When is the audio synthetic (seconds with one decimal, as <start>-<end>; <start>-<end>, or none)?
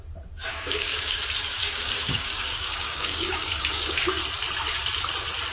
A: 0.5-1.2; 1.6-4.2